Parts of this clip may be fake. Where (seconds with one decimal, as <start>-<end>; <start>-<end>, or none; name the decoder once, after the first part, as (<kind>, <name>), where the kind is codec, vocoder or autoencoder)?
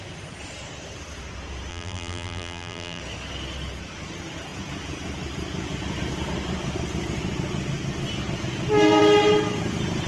1.7-3.0 (vocoder, BigVGAN v2)